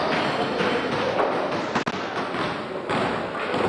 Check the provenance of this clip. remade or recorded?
recorded